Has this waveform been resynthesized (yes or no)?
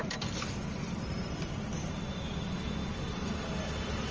no